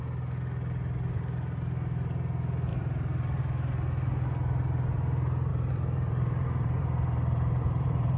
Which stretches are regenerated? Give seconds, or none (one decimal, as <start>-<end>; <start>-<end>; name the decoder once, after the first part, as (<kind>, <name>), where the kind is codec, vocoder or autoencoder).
2.7-3.4 (vocoder, BigVGAN v2); 5.5-8.2